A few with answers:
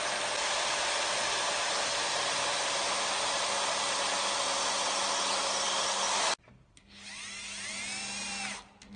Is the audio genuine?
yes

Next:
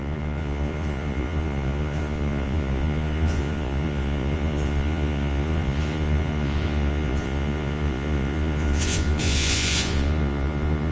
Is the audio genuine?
no